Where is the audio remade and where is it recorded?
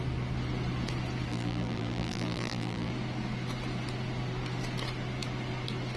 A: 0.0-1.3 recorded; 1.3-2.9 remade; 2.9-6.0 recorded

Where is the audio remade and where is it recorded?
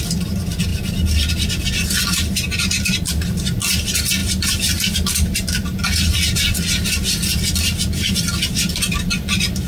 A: 0.0-9.7 recorded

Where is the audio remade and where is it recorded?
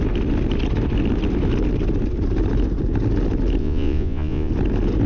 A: 0.0-3.6 recorded; 3.6-4.5 remade; 4.5-5.1 recorded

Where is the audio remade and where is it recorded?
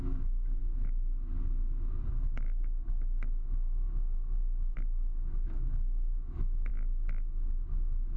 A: 0.0-0.6 remade; 0.6-2.1 recorded; 2.1-6.7 remade; 6.7-8.2 recorded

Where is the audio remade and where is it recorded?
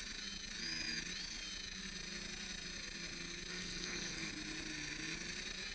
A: 0.0-3.5 recorded; 3.5-4.3 remade; 4.3-5.7 recorded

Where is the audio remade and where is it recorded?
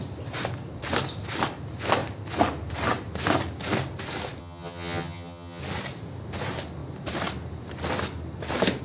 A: 0.0-4.4 recorded; 4.4-5.6 remade; 5.6-8.8 recorded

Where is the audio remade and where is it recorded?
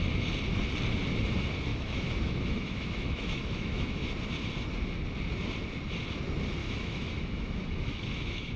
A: 0.0-1.7 recorded; 1.7-4.1 remade; 4.1-6.6 recorded; 6.6-8.6 remade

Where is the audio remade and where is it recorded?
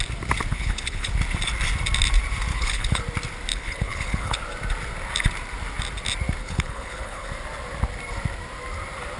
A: 0.0-0.5 recorded; 0.5-1.1 remade; 1.1-2.5 recorded; 2.5-3.0 remade; 3.0-3.5 recorded; 3.5-4.4 remade; 4.4-6.4 recorded; 6.4-7.3 remade; 7.3-9.2 recorded